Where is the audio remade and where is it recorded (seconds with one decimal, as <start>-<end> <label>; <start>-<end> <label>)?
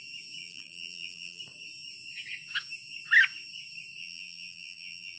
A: 0.0-0.4 recorded; 0.4-1.4 remade; 1.4-4.0 recorded; 4.0-5.2 remade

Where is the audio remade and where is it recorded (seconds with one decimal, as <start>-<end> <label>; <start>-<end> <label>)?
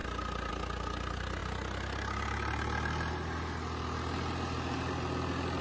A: 0.0-5.6 recorded